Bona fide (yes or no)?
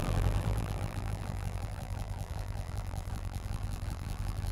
no